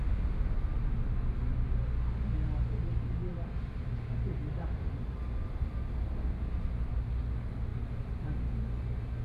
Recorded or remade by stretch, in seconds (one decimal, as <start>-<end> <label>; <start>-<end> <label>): 0.0-9.2 recorded